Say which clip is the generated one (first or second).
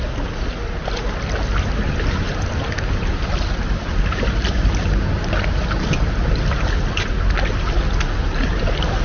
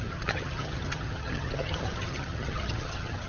second